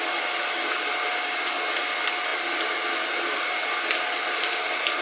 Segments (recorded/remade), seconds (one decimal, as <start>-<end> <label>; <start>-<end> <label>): 0.0-5.0 recorded